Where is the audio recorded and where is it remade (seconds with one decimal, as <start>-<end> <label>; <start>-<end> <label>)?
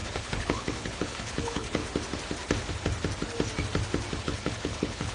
0.0-1.8 remade; 1.8-4.2 recorded; 4.2-5.1 remade